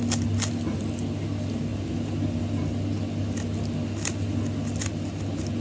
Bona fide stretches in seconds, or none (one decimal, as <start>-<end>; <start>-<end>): 0.0-5.6

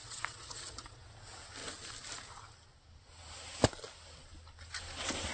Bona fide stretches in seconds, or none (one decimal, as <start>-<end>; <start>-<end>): 1.1-5.3

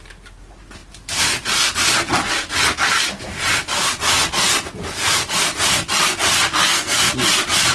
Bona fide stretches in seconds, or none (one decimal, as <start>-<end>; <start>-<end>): 0.0-6.5; 7.1-7.7

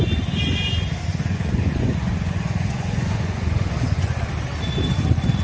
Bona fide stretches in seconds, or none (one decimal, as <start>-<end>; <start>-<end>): 0.0-1.1; 4.2-5.4